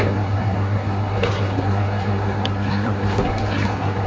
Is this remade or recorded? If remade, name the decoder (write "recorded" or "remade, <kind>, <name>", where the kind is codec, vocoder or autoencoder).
remade, codec, SNAC